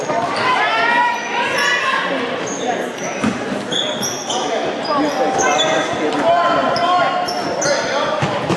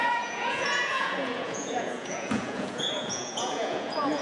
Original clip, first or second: first